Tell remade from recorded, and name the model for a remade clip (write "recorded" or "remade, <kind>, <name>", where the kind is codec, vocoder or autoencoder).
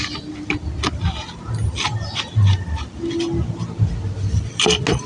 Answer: recorded